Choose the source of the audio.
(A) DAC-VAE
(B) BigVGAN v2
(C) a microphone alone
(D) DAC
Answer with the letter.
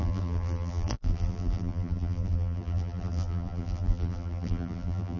B